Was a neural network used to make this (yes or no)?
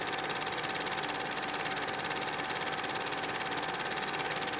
no